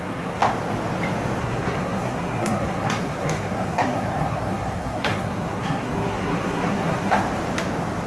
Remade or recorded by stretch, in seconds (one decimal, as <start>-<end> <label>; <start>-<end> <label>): 0.0-0.4 remade; 0.4-1.4 recorded; 1.4-7.2 remade; 7.2-8.1 recorded